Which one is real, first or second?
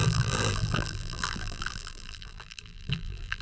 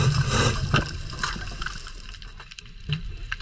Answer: second